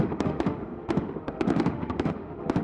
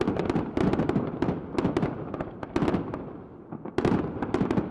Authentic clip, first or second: second